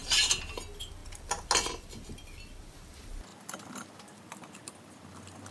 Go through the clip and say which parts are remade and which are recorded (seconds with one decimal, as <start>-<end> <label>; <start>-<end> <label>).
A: 0.0-5.5 recorded